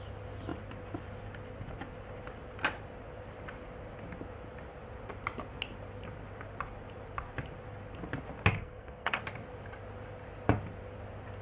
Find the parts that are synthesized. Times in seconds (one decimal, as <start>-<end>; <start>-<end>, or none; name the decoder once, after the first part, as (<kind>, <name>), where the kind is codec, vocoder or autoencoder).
8.6-9.2 (codec, SNAC)